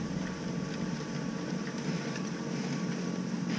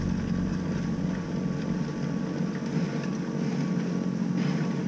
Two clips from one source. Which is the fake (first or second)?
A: first